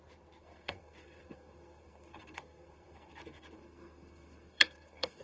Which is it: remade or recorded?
remade